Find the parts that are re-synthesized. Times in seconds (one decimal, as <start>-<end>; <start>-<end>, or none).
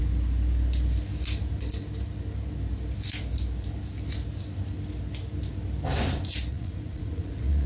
6.5-7.7